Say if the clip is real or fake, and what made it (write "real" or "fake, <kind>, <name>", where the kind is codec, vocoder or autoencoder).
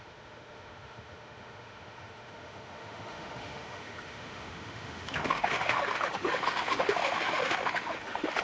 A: fake, autoencoder, DAC-VAE